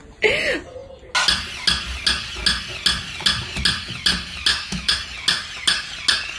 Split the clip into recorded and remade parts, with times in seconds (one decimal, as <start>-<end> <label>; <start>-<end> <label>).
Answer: 0.0-4.5 recorded; 4.5-5.0 remade; 5.0-6.4 recorded